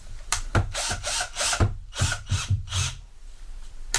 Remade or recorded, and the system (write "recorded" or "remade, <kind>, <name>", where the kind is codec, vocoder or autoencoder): remade, vocoder, BigVGAN v2